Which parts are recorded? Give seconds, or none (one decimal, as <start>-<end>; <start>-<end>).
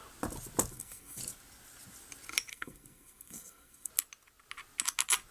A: 0.0-0.7; 1.2-2.5; 3.9-5.3